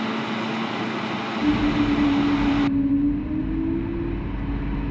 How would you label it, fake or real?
real